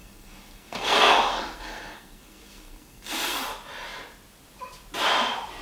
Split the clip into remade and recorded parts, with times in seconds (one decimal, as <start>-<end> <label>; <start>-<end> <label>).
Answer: 0.0-3.4 remade; 3.4-5.6 recorded